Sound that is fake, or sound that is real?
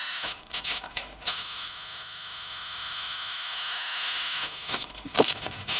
fake